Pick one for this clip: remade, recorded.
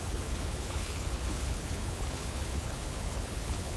remade